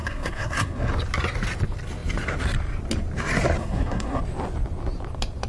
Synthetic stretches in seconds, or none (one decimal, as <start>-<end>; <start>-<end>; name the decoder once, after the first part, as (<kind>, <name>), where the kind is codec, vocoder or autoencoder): 0.0-0.9 (codec, SNAC); 3.6-4.2